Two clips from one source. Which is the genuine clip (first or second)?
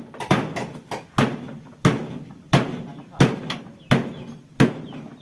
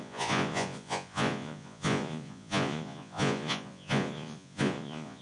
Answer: first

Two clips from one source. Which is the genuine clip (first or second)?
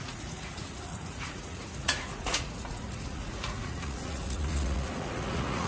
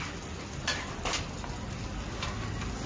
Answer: second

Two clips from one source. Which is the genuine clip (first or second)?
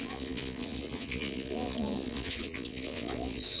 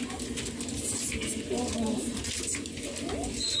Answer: second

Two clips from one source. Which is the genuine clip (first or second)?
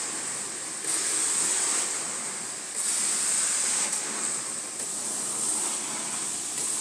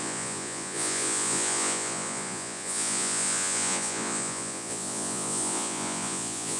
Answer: first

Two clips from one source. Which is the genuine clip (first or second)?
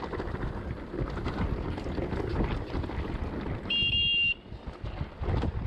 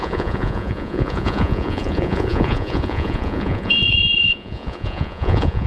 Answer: first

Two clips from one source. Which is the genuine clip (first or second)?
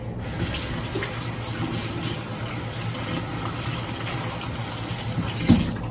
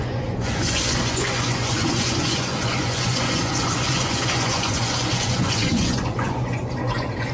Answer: first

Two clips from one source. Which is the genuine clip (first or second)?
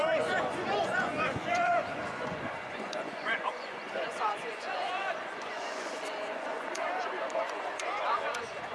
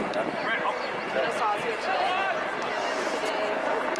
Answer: second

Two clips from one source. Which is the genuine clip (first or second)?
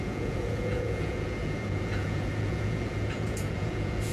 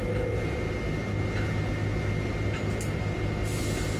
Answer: second